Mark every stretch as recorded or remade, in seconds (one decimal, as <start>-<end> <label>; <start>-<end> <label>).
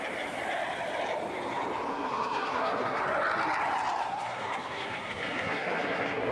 0.0-1.9 recorded; 1.9-3.0 remade; 3.0-4.0 recorded; 4.0-6.3 remade